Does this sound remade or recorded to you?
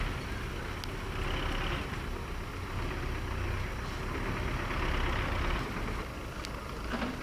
recorded